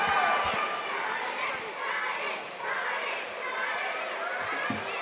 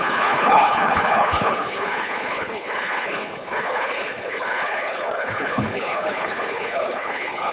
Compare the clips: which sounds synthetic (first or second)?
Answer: second